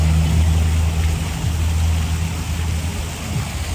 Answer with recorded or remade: recorded